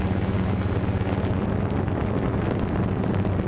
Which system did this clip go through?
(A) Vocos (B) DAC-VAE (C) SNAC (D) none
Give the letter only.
D